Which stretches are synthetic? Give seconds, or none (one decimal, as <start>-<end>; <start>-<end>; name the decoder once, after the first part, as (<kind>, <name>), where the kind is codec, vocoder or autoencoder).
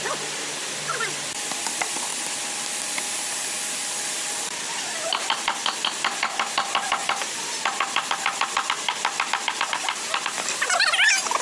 none